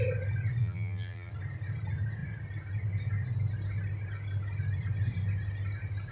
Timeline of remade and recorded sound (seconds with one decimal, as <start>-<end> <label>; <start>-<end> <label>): 0.0-0.6 recorded; 0.6-1.3 remade; 1.3-6.1 recorded